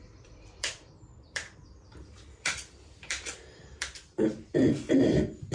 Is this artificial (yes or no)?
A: yes